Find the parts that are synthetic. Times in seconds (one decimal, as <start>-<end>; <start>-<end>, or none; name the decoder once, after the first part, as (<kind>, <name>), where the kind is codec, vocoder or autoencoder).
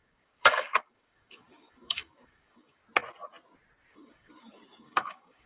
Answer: 0.0-2.8 (codec, DAC); 3.9-5.5